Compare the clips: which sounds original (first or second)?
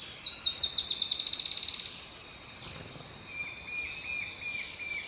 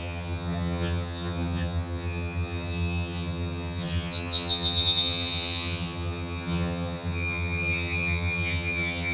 first